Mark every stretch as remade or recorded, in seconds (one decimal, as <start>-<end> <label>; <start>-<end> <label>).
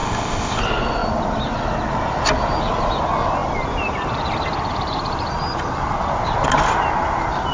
0.0-0.6 remade; 0.6-7.5 recorded